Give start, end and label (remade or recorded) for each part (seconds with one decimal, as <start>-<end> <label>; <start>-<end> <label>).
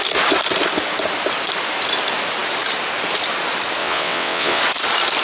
0.0-3.8 recorded; 3.8-4.6 remade; 4.6-5.2 recorded